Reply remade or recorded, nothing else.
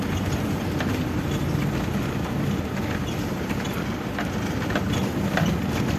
recorded